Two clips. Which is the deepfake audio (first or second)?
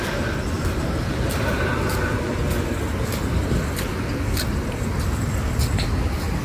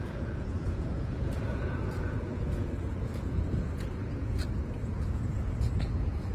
second